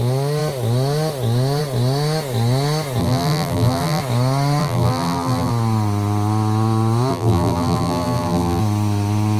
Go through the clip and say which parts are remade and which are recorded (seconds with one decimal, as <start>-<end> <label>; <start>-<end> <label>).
0.0-3.0 recorded; 3.0-4.0 remade; 4.0-4.6 recorded; 4.6-5.5 remade; 5.5-7.1 recorded; 7.1-8.6 remade; 8.6-9.4 recorded